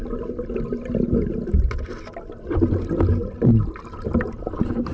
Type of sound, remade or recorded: recorded